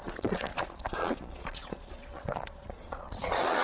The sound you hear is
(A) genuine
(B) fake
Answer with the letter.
B